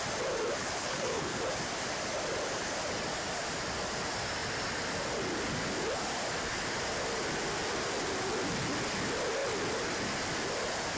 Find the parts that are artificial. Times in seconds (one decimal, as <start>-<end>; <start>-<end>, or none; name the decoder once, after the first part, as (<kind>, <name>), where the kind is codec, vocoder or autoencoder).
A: 0.6-1.4 (codec, HILCodec)